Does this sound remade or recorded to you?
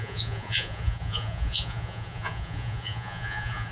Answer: remade